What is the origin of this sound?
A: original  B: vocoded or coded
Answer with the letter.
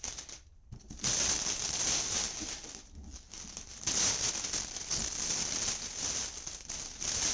A